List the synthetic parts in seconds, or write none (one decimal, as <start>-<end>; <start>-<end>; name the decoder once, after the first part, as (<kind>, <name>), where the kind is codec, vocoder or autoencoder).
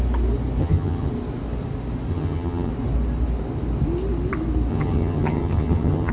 0.6-1.1 (vocoder, HiFi-GAN); 2.1-2.7; 4.7-6.1